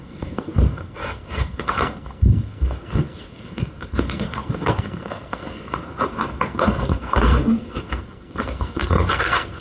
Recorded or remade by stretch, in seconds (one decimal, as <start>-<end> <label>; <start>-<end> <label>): 0.0-9.6 remade